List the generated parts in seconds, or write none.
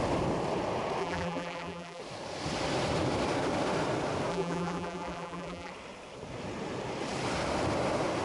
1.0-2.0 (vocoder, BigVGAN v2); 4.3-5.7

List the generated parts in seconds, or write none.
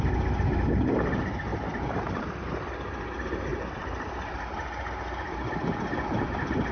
1.5-2.7 (vocoder, BigVGAN v2); 3.5-4.4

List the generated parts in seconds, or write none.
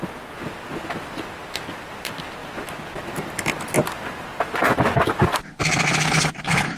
none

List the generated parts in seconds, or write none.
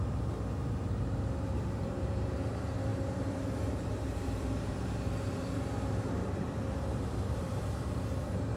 0.0-8.6 (vocoder, BigVGAN v2)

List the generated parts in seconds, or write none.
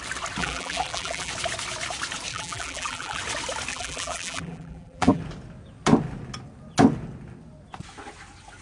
0.4-1.3 (vocoder, BigVGAN v2); 2.3-3.2; 3.7-5.2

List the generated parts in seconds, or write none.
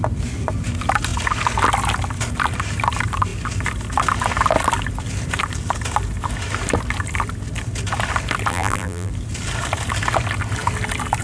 8.5-9.1 (vocoder, BigVGAN v2)